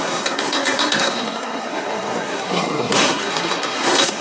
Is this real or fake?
fake